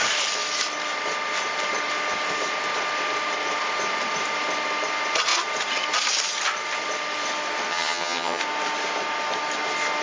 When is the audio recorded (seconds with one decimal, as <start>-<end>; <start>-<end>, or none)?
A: 0.0-7.7; 8.4-10.0